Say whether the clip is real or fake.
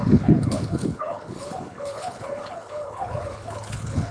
fake